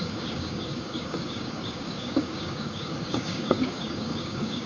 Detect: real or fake fake